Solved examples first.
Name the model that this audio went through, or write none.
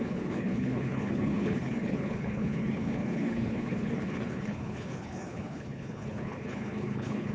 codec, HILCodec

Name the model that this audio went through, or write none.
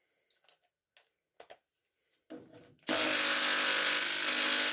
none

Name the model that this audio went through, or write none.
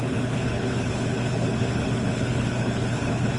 codec, HILCodec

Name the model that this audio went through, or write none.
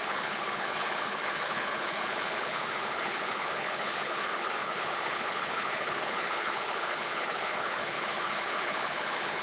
codec, HILCodec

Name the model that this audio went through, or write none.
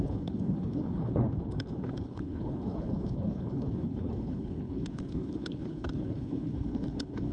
codec, HILCodec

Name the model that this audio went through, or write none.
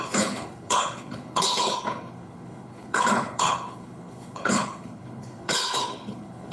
codec, HILCodec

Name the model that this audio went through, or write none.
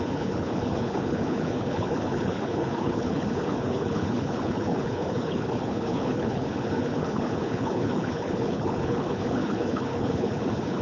codec, HILCodec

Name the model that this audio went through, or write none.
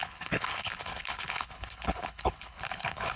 codec, HILCodec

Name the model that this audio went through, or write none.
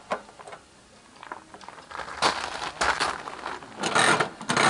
none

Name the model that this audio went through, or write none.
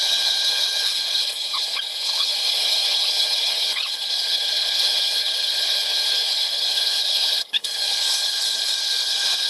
codec, HILCodec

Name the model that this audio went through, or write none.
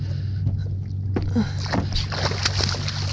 none